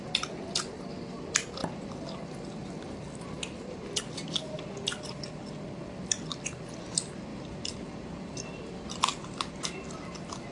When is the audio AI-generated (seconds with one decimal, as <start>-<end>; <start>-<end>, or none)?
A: 7.3-7.9; 9.1-9.8